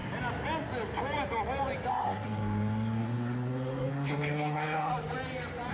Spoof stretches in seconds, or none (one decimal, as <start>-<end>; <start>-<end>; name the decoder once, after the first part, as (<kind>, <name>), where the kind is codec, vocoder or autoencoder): 1.9-4.9 (codec, SNAC)

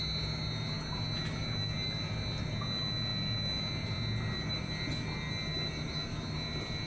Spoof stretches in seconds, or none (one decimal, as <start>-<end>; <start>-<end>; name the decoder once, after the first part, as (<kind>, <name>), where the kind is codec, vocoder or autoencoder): none

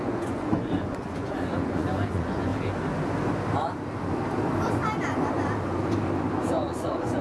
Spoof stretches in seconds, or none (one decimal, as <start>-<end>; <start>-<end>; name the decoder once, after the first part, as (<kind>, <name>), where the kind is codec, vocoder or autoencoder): 0.0-2.5 (vocoder, Vocos); 6.5-7.2

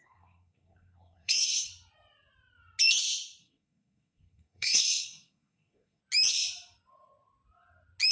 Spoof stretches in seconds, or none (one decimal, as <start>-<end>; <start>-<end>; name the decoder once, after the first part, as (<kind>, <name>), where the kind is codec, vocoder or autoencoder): 0.0-1.7 (codec, SNAC); 3.4-6.0